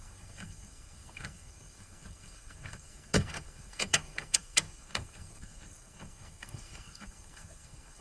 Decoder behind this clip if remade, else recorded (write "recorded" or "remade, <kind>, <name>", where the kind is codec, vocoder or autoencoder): remade, codec, SNAC